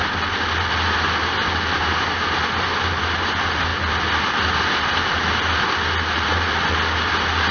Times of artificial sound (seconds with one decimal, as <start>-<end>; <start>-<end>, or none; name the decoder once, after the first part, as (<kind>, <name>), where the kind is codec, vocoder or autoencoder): none